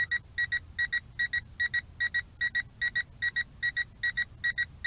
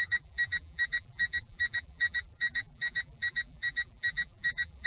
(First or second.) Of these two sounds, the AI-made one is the second